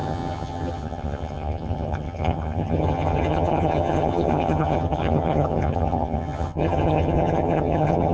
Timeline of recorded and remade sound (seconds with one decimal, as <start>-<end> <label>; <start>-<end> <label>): 0.0-8.1 remade

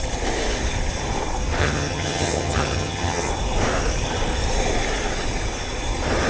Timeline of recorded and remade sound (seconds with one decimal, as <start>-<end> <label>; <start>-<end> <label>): 0.0-1.6 recorded; 1.6-3.3 remade; 3.3-6.3 recorded

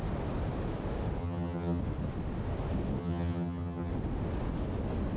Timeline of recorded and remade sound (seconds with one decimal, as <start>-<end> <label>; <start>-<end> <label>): 0.0-1.2 recorded; 1.2-1.8 remade; 1.8-3.0 recorded; 3.0-3.9 remade; 3.9-5.2 recorded

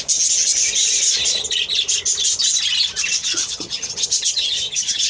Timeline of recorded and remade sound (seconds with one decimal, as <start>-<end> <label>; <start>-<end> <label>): 0.0-3.2 recorded; 3.2-5.1 remade

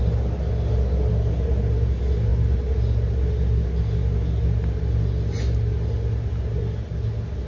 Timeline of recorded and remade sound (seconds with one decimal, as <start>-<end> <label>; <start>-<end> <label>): 0.0-7.5 recorded

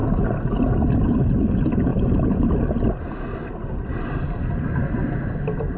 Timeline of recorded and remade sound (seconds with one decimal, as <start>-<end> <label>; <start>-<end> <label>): 0.0-5.8 recorded